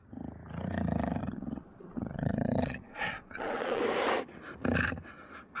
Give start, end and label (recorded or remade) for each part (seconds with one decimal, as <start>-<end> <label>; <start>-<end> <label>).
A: 0.0-1.2 recorded; 1.2-3.8 remade; 3.8-5.6 recorded